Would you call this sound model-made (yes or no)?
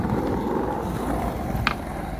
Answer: yes